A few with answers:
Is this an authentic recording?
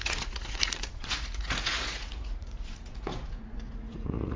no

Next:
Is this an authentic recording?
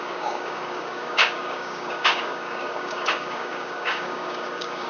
no